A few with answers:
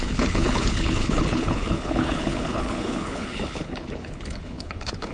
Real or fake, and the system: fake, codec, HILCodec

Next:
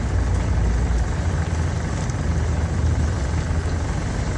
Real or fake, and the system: real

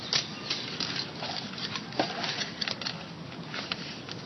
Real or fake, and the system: real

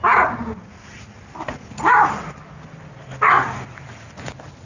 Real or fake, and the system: real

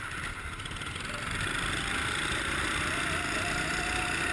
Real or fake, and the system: real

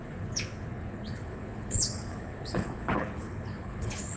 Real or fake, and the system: fake, codec, HILCodec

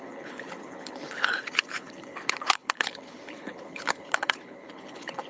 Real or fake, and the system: fake, codec, HILCodec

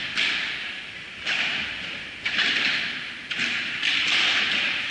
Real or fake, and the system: real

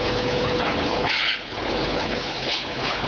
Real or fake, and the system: fake, codec, HILCodec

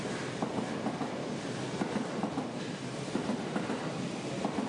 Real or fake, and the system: real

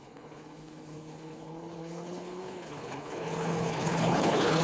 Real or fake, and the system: fake, codec, HILCodec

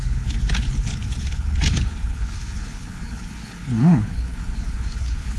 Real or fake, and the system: fake, codec, HILCodec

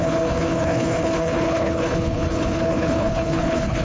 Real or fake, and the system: fake, codec, HILCodec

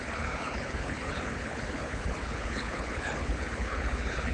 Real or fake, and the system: fake, codec, HILCodec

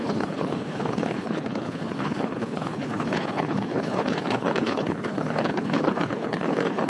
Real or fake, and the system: fake, codec, HILCodec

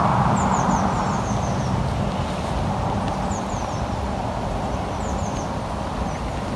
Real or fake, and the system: real